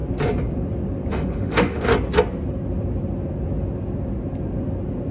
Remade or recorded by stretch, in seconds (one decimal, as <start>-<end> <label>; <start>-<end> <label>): 0.0-1.1 recorded; 1.1-1.9 remade; 1.9-5.1 recorded